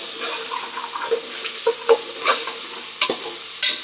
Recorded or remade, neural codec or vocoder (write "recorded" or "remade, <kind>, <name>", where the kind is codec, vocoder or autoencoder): recorded